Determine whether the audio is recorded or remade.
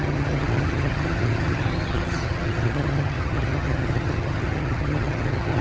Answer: remade